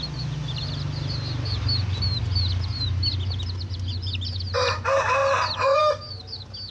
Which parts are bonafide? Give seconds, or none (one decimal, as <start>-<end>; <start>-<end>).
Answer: 0.0-6.7